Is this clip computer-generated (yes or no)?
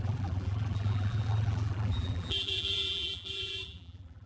yes